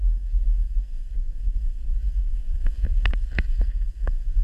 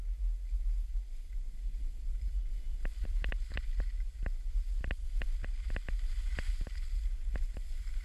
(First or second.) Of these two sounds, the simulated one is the first